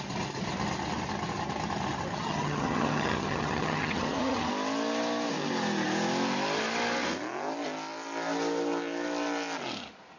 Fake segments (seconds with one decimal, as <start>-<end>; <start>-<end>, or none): 2.1-4.5